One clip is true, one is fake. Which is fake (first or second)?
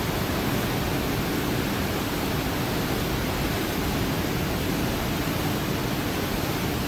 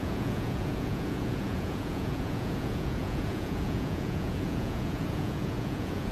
second